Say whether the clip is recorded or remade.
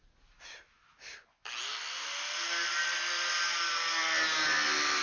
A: recorded